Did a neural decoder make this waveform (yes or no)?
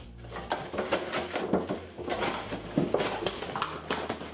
no